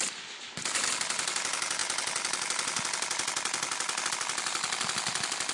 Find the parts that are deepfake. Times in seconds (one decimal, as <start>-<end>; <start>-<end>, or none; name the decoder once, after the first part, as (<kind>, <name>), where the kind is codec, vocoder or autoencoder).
none